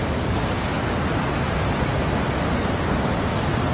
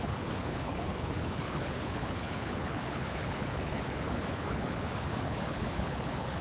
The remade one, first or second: second